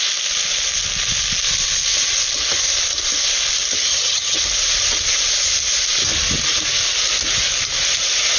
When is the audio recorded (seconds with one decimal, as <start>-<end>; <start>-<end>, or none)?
0.0-3.9; 4.4-8.4